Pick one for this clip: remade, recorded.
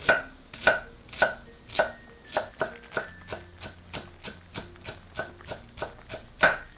recorded